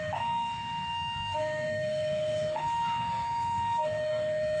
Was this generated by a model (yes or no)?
yes